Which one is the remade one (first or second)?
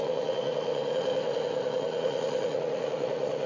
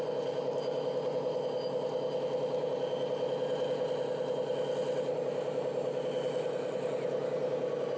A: first